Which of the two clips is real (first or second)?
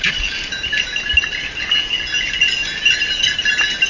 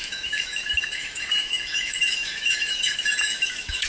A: first